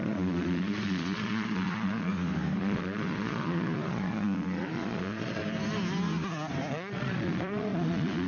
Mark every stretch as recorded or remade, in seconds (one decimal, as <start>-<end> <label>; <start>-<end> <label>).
0.0-2.1 remade; 2.1-2.6 recorded; 2.6-5.4 remade; 5.4-6.7 recorded; 6.7-8.3 remade

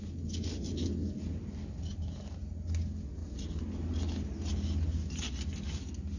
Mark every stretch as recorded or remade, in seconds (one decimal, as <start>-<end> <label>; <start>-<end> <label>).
0.0-1.9 recorded; 1.9-2.4 remade; 2.4-6.2 recorded

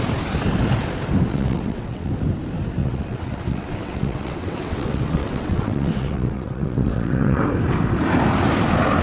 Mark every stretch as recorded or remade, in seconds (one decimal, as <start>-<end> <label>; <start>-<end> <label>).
0.0-1.3 recorded; 1.3-2.1 remade; 2.1-2.8 recorded; 2.8-7.4 remade; 7.4-9.0 recorded

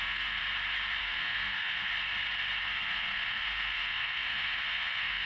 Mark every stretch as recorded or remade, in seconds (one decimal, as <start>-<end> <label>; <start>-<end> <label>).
0.0-0.4 remade; 0.4-1.0 recorded; 1.0-1.9 remade; 1.9-2.6 recorded; 2.6-5.3 remade